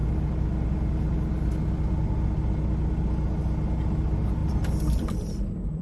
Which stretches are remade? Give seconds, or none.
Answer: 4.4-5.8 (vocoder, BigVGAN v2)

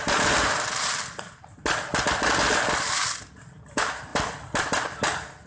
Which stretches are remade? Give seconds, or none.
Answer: none

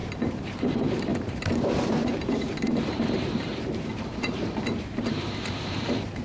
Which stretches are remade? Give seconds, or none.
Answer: 0.0-6.2 (vocoder, BigVGAN v2)